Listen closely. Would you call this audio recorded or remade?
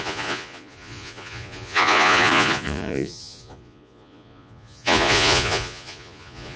remade